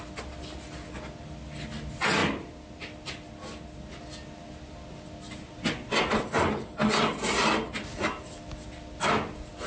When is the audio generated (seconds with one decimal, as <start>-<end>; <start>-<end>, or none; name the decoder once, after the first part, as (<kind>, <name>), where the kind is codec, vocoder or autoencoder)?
none